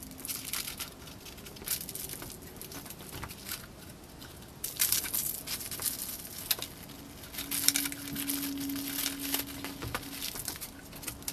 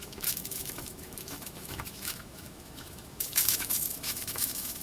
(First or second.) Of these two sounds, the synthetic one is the second